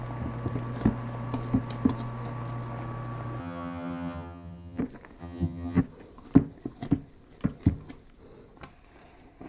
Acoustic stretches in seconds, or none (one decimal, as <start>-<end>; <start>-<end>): 0.0-3.4; 4.8-5.2; 5.8-9.5